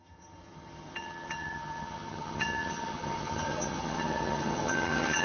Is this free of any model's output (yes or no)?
no